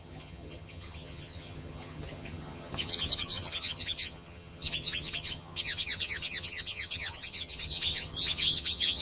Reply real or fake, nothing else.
fake